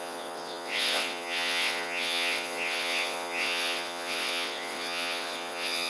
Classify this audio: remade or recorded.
remade